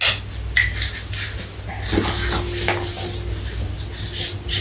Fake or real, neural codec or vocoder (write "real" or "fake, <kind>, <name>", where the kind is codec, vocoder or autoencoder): real